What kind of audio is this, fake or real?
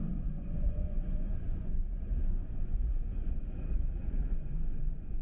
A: fake